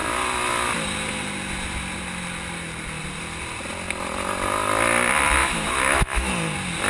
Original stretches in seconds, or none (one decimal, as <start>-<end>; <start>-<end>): 0.0-5.4; 6.3-6.9